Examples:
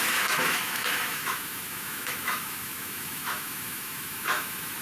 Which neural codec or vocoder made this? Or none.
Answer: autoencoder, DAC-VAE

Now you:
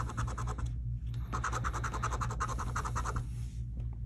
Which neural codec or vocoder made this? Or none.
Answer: none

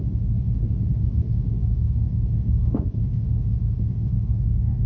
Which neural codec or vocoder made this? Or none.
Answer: autoencoder, DAC-VAE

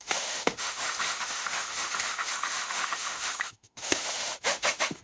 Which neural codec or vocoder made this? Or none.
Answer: autoencoder, DAC-VAE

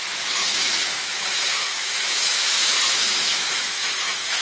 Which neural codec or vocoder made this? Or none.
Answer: autoencoder, DAC-VAE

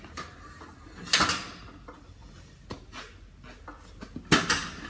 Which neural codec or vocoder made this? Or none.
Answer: none